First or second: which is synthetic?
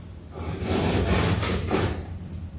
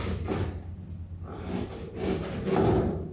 first